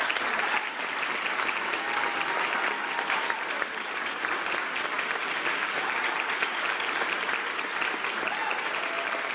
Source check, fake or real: real